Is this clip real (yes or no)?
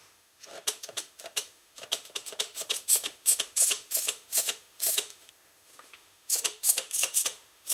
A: no